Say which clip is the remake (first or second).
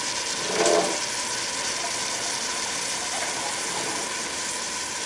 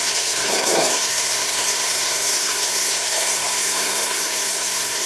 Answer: second